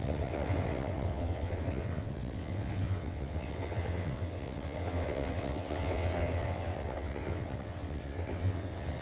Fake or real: fake